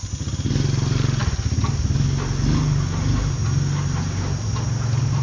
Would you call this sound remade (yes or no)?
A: no